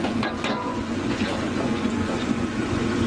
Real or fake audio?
fake